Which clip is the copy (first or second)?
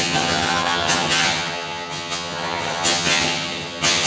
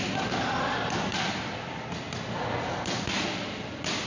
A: first